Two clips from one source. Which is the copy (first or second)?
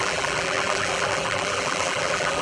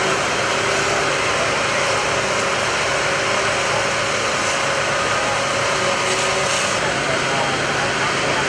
first